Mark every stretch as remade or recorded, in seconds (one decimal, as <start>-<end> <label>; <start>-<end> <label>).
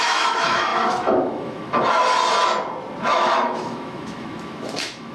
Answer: 0.0-2.0 remade; 2.0-3.0 recorded; 3.0-5.1 remade